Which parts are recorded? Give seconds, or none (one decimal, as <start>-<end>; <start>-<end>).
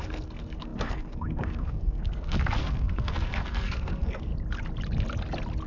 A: 4.3-5.7